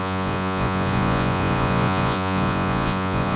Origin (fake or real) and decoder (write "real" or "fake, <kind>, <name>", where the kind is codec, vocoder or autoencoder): fake, vocoder, Vocos